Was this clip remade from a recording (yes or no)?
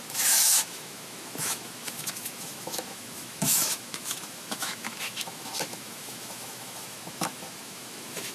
yes